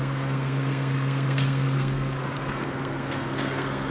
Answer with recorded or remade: remade